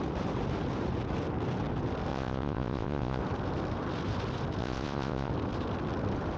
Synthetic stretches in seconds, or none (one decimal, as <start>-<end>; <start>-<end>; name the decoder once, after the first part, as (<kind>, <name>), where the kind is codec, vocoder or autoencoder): 2.1-3.2 (vocoder, Vocos); 4.6-5.3